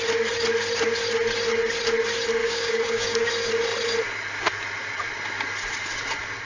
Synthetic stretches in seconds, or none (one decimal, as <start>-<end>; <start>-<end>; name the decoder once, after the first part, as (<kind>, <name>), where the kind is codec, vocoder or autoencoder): 2.4-3.3 (codec, DAC)